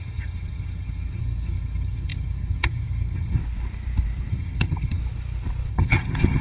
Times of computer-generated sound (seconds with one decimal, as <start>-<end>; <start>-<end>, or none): 0.0-3.4; 4.3-5.0; 5.7-6.4